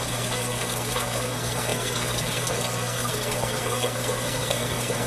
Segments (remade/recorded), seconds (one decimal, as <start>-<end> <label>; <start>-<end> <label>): 0.0-5.1 remade